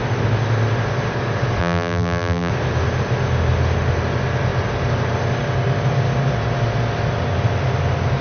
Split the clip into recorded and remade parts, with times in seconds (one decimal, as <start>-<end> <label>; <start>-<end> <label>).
0.0-1.6 recorded; 1.6-2.5 remade; 2.5-8.2 recorded